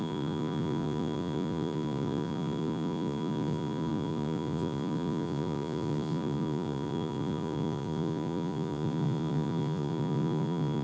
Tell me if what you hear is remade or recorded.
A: remade